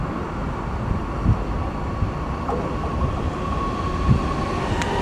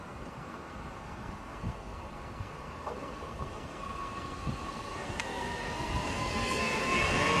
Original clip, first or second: first